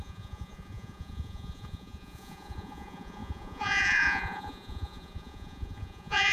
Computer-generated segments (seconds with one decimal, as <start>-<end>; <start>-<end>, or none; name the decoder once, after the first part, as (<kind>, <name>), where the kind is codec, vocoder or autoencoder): 0.0-6.3 (vocoder, Vocos)